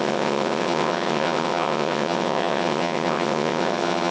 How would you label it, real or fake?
fake